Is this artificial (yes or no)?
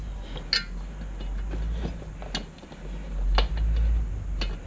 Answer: no